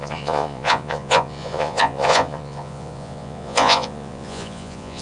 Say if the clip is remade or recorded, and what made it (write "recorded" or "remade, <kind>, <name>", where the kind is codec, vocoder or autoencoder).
remade, vocoder, Vocos